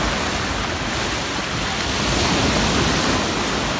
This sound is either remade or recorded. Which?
recorded